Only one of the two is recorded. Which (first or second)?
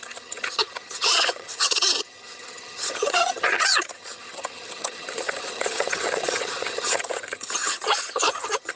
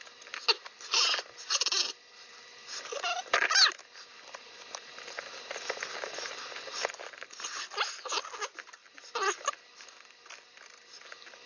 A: second